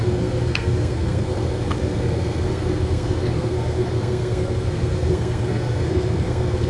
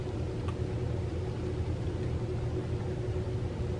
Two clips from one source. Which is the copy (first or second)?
first